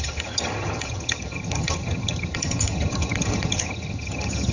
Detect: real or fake fake